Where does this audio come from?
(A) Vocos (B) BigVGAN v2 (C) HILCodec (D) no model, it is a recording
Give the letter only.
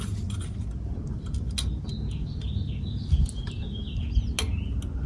D